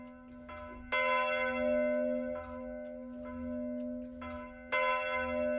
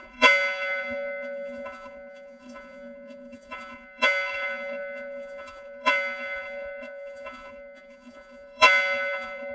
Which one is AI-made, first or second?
second